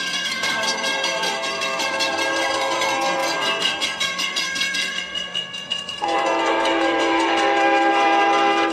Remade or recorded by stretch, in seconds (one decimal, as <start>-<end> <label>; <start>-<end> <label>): 0.0-8.7 remade